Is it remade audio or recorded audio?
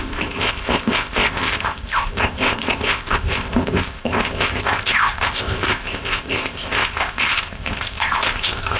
remade